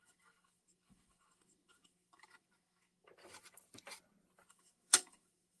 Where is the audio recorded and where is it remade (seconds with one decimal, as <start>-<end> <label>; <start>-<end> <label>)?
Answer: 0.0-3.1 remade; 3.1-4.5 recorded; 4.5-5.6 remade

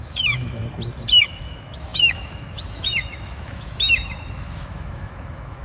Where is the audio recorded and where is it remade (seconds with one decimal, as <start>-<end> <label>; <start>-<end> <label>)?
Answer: 0.0-0.6 remade; 0.6-1.4 recorded; 1.4-5.6 remade

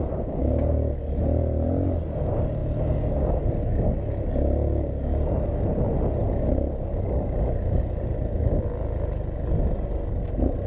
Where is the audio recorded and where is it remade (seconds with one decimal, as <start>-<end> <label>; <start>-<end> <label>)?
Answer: 0.0-10.7 recorded

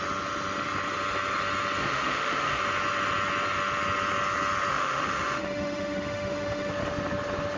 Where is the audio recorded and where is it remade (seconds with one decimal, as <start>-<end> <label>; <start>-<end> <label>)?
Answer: 0.0-1.8 recorded; 1.8-2.6 remade; 2.6-4.7 recorded; 4.7-6.7 remade; 6.7-7.6 recorded

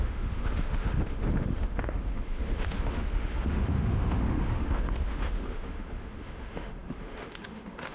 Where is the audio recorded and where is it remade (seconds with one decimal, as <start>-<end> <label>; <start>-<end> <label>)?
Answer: 0.0-7.9 remade